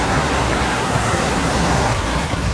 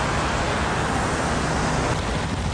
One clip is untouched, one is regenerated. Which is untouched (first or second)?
second